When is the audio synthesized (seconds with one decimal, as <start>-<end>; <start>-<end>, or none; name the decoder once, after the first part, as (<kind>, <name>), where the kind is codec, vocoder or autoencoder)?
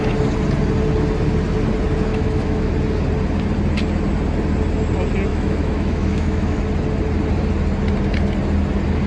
2.1-2.7 (autoencoder, DAC-VAE); 5.3-6.6